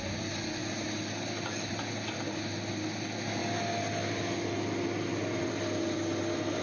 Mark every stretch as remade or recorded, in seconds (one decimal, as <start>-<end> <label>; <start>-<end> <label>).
0.0-6.6 recorded